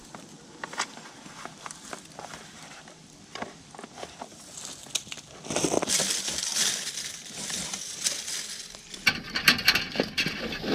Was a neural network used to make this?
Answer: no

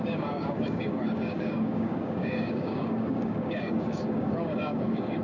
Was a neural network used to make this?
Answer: yes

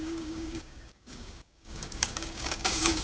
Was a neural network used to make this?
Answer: yes